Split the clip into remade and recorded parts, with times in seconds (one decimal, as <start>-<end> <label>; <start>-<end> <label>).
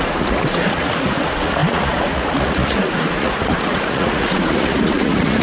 0.0-5.4 remade